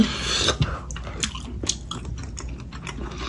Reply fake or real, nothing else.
real